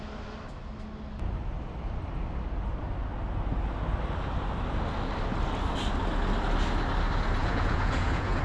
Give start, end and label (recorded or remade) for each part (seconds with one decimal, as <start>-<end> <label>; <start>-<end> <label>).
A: 0.0-7.4 recorded; 7.4-8.4 remade